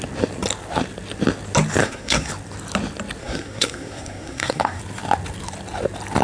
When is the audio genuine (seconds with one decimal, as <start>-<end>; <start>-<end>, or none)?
0.0-1.8; 2.3-3.2; 4.8-6.2